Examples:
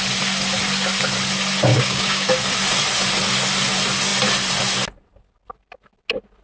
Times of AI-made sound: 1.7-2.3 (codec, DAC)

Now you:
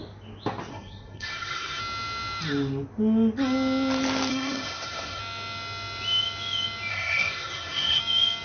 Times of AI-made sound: 0.7-1.8 (codec, SNAC); 4.3-5.2; 6.9-8.0

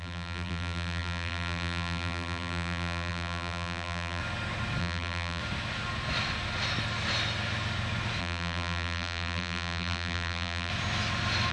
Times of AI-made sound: 0.0-4.2 (vocoder, BigVGAN v2); 4.8-5.4; 8.2-10.7

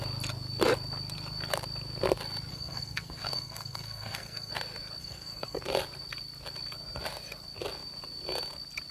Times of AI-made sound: 2.5-4.5 (codec, SNAC); 5.0-5.6

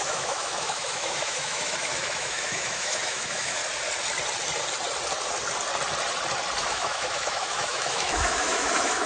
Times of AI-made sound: 0.0-3.6 (autoencoder, DAC-VAE); 6.6-9.1

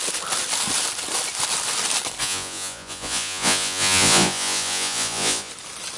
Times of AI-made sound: 2.2-5.5 (vocoder, Vocos)